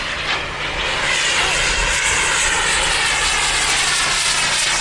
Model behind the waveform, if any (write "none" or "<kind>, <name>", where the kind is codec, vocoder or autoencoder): none